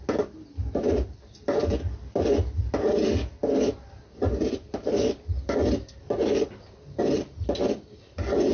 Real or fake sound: real